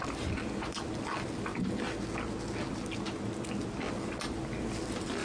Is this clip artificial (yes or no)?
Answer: no